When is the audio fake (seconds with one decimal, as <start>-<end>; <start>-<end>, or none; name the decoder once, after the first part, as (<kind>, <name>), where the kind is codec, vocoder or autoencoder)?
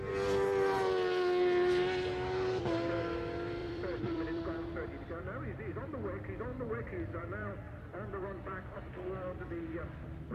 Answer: 3.6-5.2 (vocoder, BigVGAN v2); 6.5-9.4